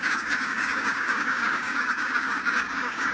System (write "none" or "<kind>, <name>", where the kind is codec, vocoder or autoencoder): codec, DAC